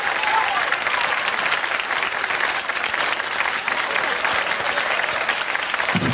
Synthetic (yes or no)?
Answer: no